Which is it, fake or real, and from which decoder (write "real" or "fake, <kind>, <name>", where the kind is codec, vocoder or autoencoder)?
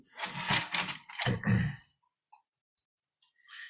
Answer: fake, vocoder, BigVGAN v2